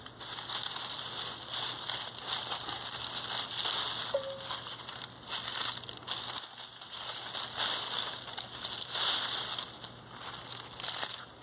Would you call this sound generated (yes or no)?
no